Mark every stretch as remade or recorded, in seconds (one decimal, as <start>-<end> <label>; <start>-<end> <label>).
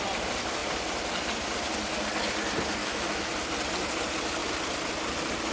0.0-2.8 recorded; 2.8-3.3 remade; 3.3-5.5 recorded